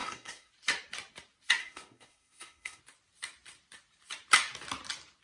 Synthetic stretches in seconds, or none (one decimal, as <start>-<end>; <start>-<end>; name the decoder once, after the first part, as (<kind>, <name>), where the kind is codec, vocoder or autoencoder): 0.0-0.5 (codec, SNAC); 1.6-2.8